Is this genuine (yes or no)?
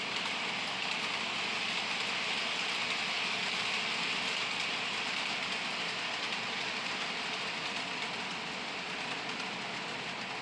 yes